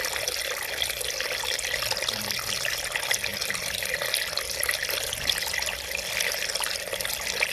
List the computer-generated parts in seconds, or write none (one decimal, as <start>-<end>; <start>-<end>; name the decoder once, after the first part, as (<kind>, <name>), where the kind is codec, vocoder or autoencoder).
none